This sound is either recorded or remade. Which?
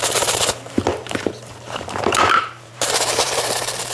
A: remade